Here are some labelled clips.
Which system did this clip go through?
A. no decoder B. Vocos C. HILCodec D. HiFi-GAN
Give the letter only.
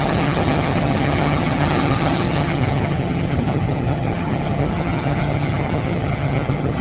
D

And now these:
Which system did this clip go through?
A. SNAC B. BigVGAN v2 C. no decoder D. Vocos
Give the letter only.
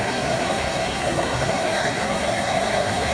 A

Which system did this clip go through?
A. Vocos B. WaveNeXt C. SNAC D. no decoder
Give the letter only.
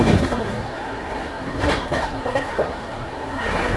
C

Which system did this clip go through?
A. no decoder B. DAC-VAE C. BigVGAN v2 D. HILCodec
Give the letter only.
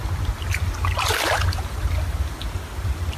A